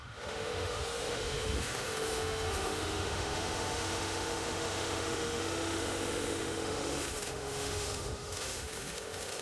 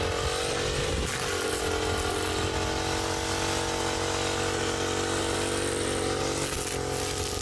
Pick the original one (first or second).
second